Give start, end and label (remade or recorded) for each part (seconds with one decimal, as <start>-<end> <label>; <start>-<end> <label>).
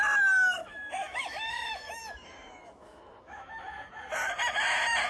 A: 0.0-0.6 recorded; 0.6-3.7 remade; 3.7-5.1 recorded